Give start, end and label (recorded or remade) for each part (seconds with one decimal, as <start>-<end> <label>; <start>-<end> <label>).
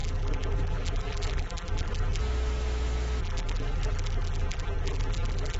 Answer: 0.0-2.2 remade; 2.2-3.2 recorded; 3.2-5.6 remade